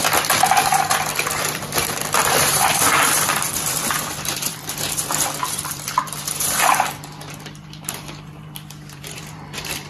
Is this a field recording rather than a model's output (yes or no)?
no